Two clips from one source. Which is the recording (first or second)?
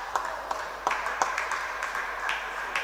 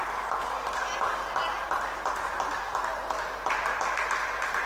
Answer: second